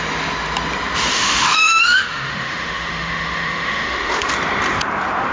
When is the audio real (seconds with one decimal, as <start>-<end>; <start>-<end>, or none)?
0.0-1.1; 4.3-5.3